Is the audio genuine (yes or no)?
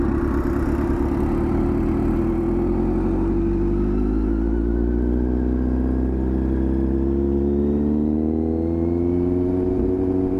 yes